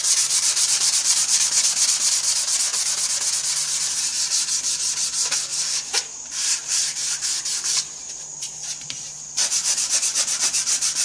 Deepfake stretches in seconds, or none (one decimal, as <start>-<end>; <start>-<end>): 0.0-1.5; 5.5-9.1

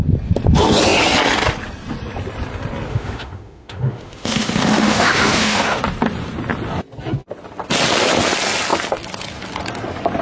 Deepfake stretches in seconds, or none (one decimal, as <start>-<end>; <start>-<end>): 2.9-5.8

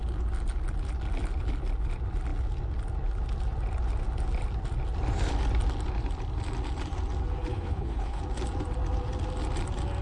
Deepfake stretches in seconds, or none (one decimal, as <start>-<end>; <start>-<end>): 7.5-8.2

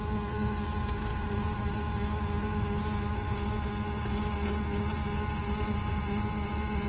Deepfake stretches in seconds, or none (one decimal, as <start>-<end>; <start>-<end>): 1.1-1.7; 5.4-6.0

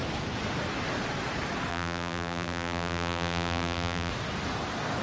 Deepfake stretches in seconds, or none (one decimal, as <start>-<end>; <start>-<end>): 1.7-4.1

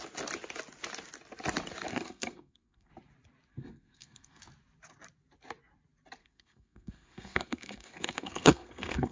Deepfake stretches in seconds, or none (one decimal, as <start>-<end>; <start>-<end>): 1.9-2.9; 3.5-4.4; 6.2-9.1

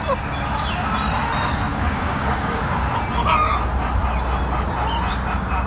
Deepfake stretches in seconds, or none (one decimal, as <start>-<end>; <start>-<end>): 1.7-2.6